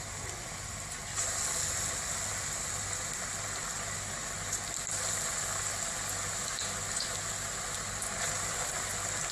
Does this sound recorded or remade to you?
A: recorded